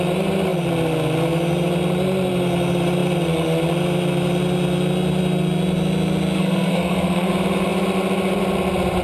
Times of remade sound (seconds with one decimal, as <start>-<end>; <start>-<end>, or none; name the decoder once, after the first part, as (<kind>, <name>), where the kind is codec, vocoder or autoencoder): 6.4-7.3 (codec, SNAC)